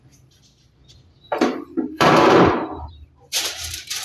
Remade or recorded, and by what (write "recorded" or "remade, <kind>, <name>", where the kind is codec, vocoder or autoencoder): remade, vocoder, BigVGAN v2